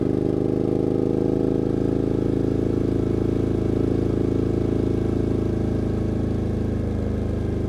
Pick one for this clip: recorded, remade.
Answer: recorded